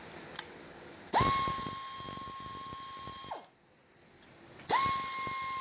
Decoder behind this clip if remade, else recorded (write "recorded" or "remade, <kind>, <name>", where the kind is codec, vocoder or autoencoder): recorded